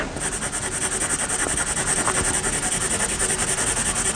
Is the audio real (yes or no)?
yes